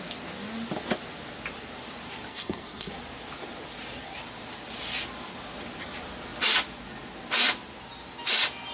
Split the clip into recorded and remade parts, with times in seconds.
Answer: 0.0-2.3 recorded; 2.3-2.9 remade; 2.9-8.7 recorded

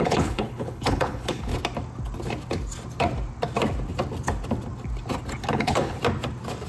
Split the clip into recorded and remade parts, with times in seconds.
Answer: 0.0-1.5 remade; 1.5-5.5 recorded; 5.5-6.0 remade; 6.0-6.7 recorded